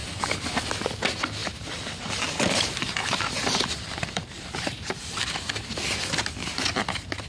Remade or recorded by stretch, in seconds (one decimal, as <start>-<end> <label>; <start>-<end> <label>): 0.0-0.7 remade; 0.7-1.4 recorded; 1.4-5.0 remade; 5.0-7.3 recorded